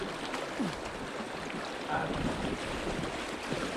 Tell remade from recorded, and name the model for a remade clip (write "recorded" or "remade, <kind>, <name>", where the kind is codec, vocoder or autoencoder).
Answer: recorded